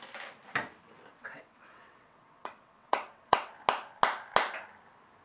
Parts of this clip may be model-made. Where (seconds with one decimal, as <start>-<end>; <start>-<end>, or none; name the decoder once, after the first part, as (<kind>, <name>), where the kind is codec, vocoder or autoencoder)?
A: 1.1-3.5 (vocoder, WaveNeXt)